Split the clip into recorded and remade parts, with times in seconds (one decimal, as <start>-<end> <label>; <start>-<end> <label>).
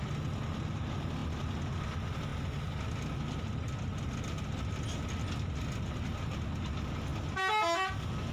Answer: 0.0-8.3 recorded